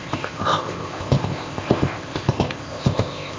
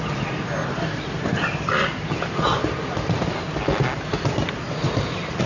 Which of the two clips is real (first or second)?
second